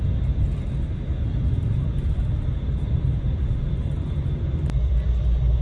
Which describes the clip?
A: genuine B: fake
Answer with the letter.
A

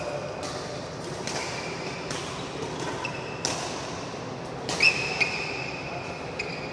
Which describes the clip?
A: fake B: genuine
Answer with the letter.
B